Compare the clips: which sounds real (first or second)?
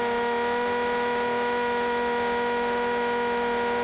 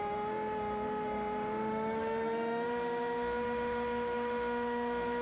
first